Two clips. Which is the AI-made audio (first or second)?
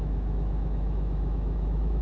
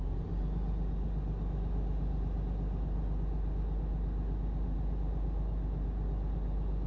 first